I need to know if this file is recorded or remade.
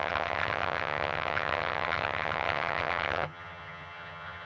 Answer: remade